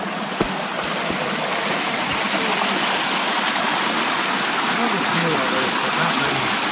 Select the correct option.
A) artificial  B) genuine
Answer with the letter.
B